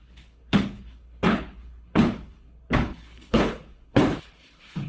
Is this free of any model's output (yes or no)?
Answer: no